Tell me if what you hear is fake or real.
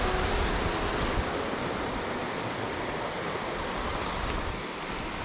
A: real